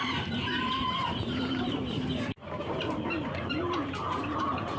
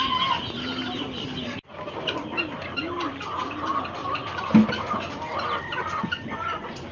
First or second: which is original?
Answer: second